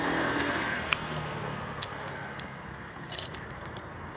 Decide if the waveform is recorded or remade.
remade